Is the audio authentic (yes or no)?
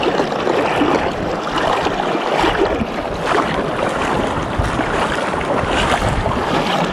yes